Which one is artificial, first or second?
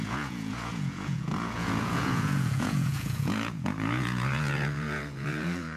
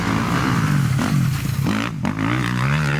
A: first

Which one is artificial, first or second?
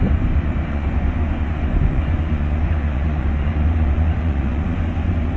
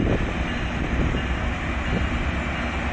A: first